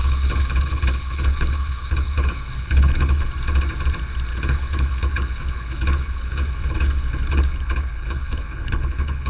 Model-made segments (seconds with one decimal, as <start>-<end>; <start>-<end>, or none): 0.0-3.3; 4.3-9.3